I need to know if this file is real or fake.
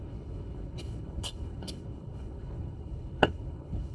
fake